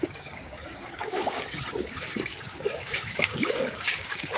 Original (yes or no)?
no